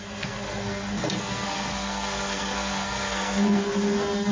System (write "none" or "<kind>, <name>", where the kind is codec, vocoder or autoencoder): codec, SNAC